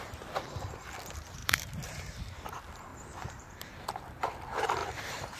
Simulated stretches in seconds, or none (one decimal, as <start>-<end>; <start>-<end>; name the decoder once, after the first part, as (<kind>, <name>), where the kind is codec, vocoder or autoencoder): 1.4-2.2 (vocoder, BigVGAN v2); 2.9-4.3; 4.8-5.4